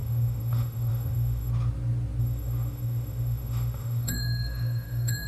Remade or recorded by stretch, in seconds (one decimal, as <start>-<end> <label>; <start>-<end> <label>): 0.0-1.5 remade; 1.5-2.2 recorded; 2.2-5.3 remade